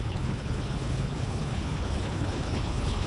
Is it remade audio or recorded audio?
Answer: remade